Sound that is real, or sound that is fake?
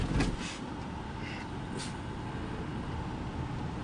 real